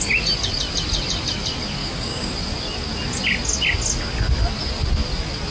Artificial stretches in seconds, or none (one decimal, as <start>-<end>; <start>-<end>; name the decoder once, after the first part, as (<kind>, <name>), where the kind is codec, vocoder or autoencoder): 1.8-2.3 (codec, DAC)